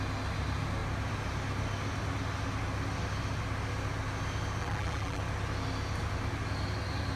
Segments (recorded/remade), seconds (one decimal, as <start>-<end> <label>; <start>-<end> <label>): 0.0-4.6 recorded; 4.6-5.2 remade; 5.2-7.2 recorded